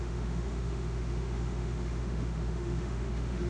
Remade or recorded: remade